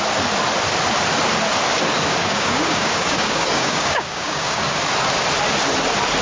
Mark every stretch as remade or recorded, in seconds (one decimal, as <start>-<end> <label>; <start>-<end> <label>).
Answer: 0.0-2.2 recorded; 2.2-4.8 remade; 4.8-6.2 recorded